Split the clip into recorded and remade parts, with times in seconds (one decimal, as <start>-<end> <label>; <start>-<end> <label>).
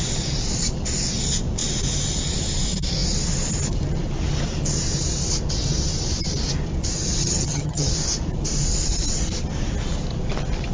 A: 0.0-7.2 recorded; 7.2-7.9 remade; 7.9-10.7 recorded